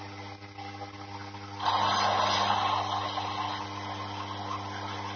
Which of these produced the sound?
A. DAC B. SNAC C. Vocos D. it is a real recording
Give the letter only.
D